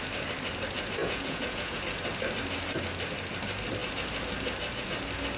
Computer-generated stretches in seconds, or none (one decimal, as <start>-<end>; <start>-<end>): 1.0-1.8